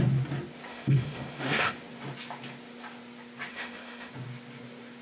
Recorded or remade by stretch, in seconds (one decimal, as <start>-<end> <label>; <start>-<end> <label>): 0.0-0.7 recorded; 0.7-1.7 remade; 1.7-3.5 recorded; 3.5-4.1 remade; 4.1-5.0 recorded